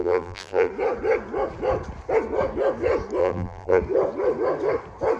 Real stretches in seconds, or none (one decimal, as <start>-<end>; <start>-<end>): 0.7-3.2; 3.8-5.2